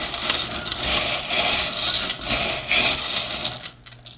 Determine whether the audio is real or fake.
real